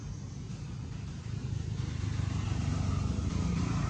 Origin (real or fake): real